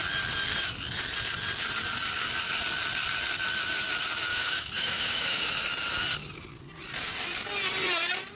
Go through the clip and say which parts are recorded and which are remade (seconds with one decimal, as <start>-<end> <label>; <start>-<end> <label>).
0.0-4.3 recorded; 4.3-5.5 remade; 5.5-8.4 recorded